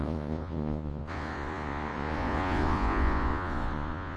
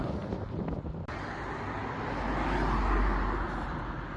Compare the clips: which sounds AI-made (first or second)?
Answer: first